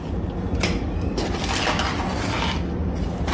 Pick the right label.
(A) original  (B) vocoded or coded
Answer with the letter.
A